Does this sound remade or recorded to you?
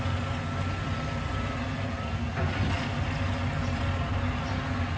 recorded